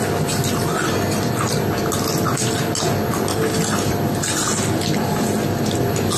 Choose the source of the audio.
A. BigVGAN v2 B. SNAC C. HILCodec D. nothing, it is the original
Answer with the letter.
D